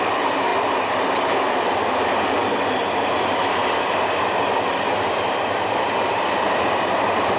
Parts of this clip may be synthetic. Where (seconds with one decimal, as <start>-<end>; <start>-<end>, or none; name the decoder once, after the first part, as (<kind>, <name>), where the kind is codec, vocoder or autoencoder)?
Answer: none